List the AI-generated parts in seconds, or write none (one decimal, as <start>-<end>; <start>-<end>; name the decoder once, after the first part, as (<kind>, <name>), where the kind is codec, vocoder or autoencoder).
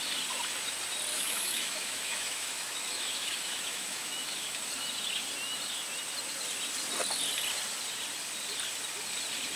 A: 1.1-4.6 (autoencoder, DAC-VAE)